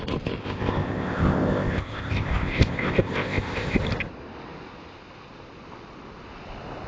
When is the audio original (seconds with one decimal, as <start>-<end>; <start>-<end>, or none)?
0.0-0.4; 3.8-6.9